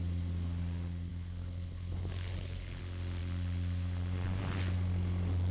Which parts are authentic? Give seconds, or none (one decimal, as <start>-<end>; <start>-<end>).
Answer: 0.0-1.1; 2.8-5.5